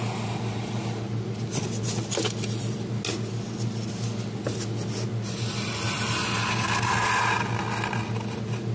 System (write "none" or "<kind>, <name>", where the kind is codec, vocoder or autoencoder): none